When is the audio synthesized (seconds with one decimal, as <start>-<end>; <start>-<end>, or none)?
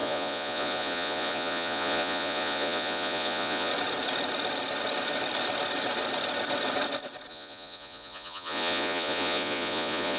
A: 0.0-3.7; 7.3-10.2